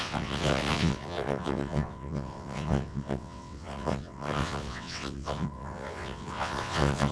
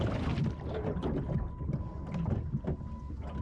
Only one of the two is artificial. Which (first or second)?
first